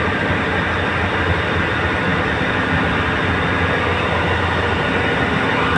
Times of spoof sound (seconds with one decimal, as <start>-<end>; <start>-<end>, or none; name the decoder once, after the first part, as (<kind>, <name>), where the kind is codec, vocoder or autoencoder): none